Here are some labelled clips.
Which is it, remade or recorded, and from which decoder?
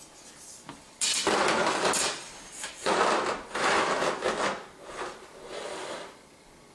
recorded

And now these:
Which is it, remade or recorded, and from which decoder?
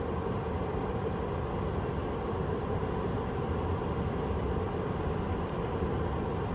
recorded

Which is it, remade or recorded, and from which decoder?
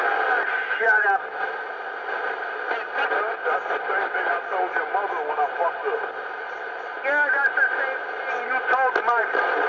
recorded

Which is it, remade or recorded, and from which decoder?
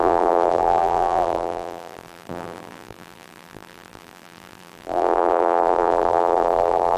remade, vocoder, BigVGAN v2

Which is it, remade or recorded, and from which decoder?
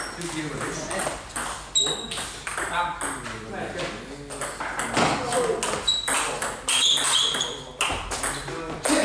recorded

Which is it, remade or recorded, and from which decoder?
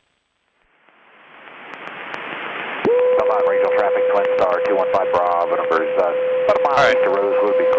recorded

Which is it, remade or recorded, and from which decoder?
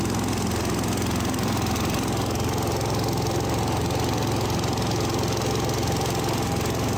recorded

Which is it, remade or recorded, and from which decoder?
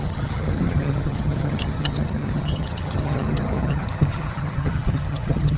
remade, vocoder, HiFi-GAN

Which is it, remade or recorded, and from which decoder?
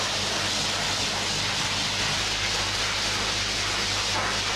recorded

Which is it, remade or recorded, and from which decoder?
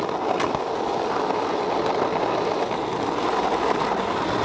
recorded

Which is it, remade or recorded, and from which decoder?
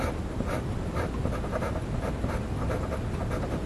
recorded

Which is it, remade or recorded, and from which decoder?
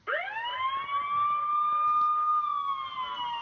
recorded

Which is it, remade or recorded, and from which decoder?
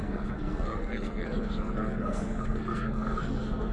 remade, codec, SNAC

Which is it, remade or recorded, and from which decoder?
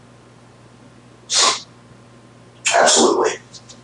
recorded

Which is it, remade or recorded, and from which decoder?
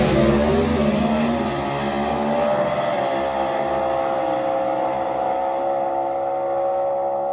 recorded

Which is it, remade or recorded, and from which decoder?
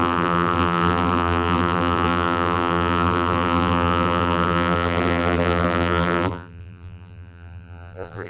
remade, vocoder, BigVGAN v2